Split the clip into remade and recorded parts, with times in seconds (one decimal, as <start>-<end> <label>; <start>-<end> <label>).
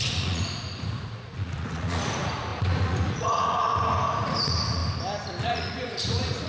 0.0-3.7 remade; 3.7-4.2 recorded; 4.2-4.8 remade; 4.8-5.4 recorded; 5.4-6.5 remade